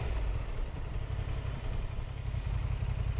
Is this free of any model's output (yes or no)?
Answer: yes